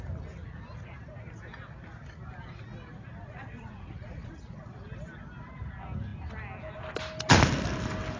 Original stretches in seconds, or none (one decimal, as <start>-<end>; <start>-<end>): 0.0-3.2; 4.6-8.2